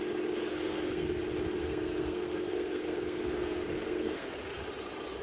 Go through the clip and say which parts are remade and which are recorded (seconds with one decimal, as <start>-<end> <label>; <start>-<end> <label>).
0.0-0.5 recorded; 0.5-1.2 remade; 1.2-1.6 recorded; 1.6-4.3 remade; 4.3-5.2 recorded

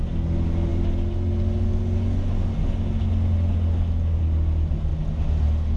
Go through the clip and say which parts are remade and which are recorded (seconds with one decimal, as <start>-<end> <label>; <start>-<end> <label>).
0.0-5.8 recorded

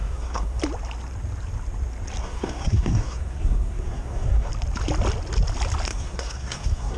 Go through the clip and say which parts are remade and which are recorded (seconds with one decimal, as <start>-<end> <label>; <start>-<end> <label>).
0.0-0.6 remade; 0.6-2.2 recorded; 2.2-4.5 remade; 4.5-5.9 recorded; 5.9-7.0 remade

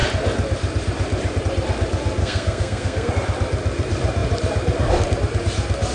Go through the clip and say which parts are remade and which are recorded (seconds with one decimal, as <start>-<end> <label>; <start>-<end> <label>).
0.0-2.2 recorded; 2.2-3.1 remade; 3.1-5.9 recorded